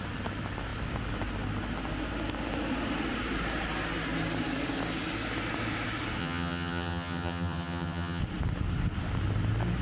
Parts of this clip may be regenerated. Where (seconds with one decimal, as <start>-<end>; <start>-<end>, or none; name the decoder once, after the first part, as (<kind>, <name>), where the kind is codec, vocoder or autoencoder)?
6.2-8.2 (vocoder, HiFi-GAN)